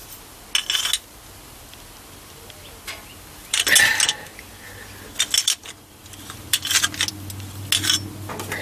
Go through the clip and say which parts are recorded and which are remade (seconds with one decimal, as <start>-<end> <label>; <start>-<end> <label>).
0.0-8.6 recorded

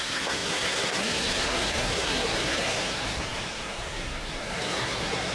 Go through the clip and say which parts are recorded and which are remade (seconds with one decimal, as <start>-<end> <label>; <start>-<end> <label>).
0.0-5.3 remade

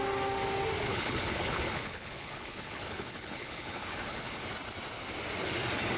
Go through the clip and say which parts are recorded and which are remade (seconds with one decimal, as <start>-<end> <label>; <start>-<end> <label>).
0.0-0.9 recorded; 0.9-4.5 remade; 4.5-6.0 recorded

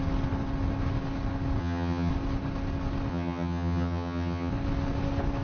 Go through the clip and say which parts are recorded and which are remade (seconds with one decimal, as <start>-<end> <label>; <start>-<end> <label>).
0.0-1.6 recorded; 1.6-2.1 remade; 2.1-3.1 recorded; 3.1-4.5 remade; 4.5-5.4 recorded

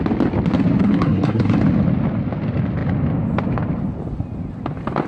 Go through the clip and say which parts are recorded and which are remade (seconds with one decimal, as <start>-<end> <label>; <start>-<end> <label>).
0.0-0.8 recorded; 0.8-1.6 remade; 1.6-5.1 recorded

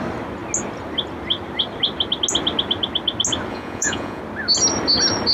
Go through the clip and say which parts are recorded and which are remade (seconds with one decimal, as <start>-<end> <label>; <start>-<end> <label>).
0.0-3.5 recorded; 3.5-4.2 remade; 4.2-5.3 recorded